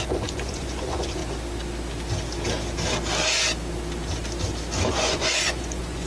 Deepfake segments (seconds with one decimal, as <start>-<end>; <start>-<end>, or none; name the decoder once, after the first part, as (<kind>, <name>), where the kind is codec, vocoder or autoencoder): 0.0-1.2 (vocoder, Vocos); 4.9-6.1